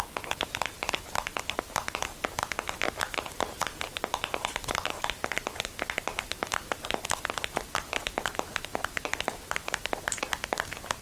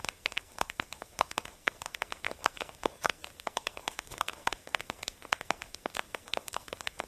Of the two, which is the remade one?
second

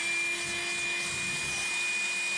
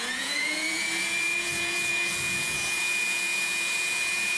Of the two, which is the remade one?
second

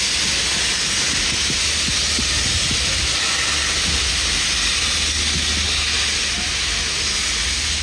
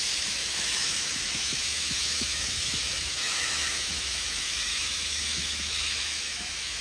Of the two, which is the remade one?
second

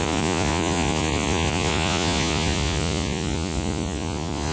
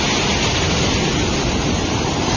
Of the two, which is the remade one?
first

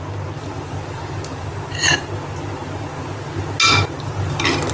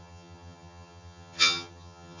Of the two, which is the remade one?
second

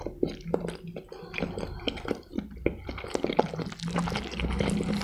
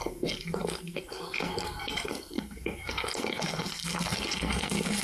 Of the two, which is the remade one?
second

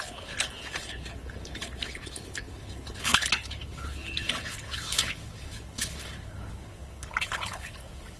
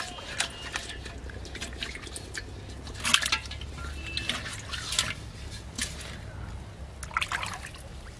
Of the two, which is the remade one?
first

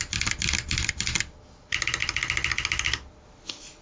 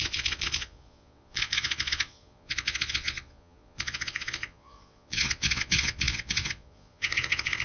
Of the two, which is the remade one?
second